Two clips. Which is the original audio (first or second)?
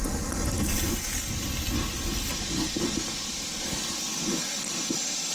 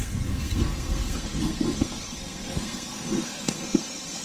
first